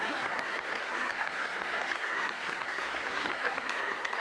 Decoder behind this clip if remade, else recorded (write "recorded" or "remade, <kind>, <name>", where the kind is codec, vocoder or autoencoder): remade, codec, SNAC